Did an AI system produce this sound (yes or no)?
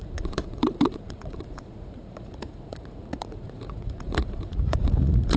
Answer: yes